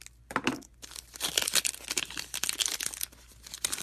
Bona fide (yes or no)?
yes